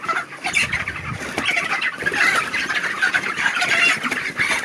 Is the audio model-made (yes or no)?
yes